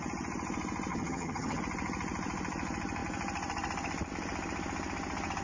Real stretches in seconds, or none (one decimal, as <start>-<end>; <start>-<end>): 0.0-0.9; 1.6-5.4